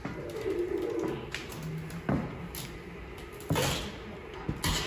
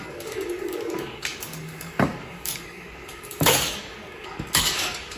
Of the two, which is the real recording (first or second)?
first